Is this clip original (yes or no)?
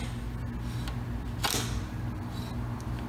yes